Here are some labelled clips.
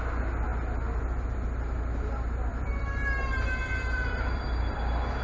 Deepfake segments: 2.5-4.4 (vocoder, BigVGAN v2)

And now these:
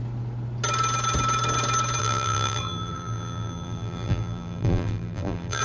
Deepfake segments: 2.0-5.6 (vocoder, BigVGAN v2)

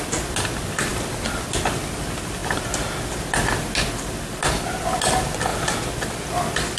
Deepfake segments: 0.0-5.5 (vocoder, BigVGAN v2)

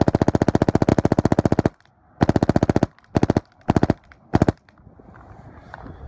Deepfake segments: none

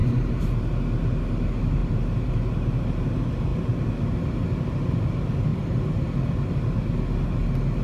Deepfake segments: 0.0-0.5 (vocoder, BigVGAN v2); 1.8-2.7; 5.5-6.3

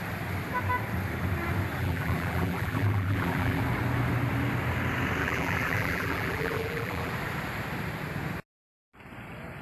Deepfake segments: 1.8-3.6 (vocoder, BigVGAN v2); 5.2-7.1

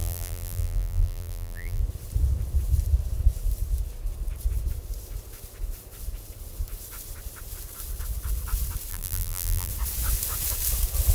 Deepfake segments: 0.0-1.8 (vocoder, BigVGAN v2); 8.9-9.7

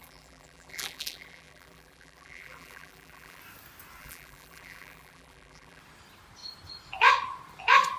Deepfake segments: 0.0-3.4 (vocoder, BigVGAN v2); 4.0-5.8